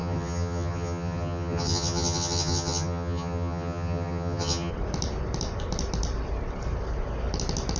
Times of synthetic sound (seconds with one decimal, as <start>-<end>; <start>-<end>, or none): 0.0-4.7